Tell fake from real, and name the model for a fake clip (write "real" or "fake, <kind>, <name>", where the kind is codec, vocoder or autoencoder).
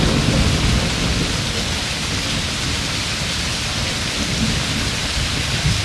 real